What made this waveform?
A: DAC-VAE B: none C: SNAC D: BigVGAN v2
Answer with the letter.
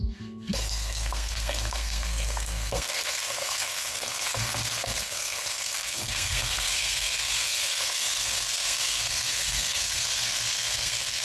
C